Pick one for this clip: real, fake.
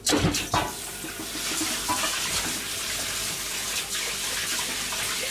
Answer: real